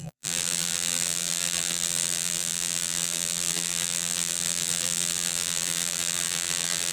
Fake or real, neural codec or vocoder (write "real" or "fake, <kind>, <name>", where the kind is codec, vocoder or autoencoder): fake, vocoder, BigVGAN v2